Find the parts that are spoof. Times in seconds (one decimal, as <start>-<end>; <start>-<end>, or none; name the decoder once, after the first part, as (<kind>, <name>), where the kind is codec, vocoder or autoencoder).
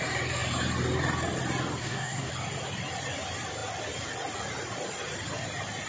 1.8-2.3 (codec, SNAC)